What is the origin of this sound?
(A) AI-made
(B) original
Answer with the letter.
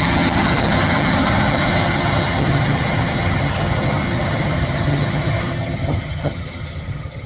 A